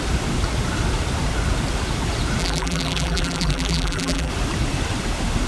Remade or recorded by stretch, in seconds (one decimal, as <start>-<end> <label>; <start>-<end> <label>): 0.0-2.4 recorded; 2.4-4.3 remade; 4.3-5.5 recorded